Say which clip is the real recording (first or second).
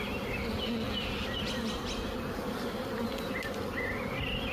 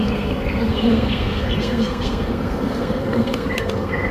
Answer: first